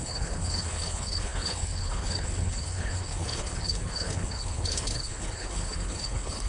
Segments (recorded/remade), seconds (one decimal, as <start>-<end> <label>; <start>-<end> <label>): 0.0-6.5 remade